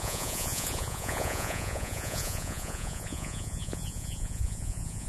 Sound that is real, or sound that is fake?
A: fake